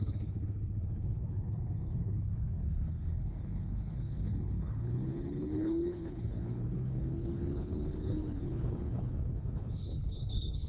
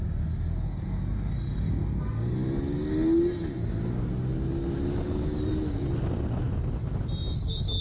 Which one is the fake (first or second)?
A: first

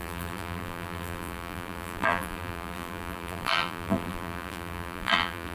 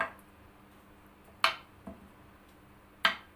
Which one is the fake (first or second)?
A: first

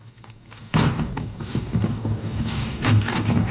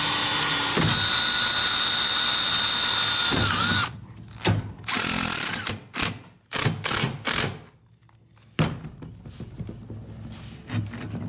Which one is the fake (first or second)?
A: first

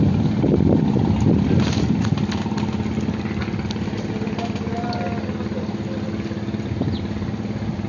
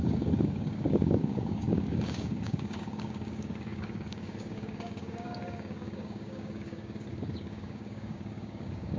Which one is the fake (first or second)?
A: second